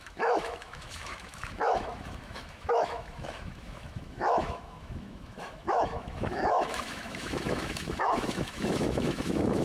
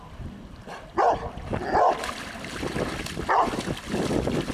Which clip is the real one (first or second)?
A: second